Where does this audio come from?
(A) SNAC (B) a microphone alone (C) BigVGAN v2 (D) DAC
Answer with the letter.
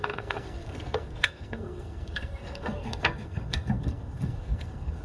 A